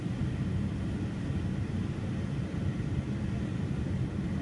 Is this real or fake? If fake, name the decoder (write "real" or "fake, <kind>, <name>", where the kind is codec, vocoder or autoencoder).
real